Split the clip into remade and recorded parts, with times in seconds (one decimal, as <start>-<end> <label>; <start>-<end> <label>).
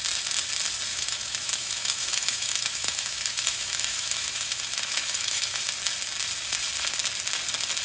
0.0-0.9 recorded; 0.9-5.6 remade; 5.6-7.8 recorded